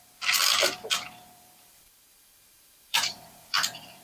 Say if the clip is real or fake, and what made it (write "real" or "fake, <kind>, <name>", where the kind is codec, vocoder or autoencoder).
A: fake, vocoder, BigVGAN v2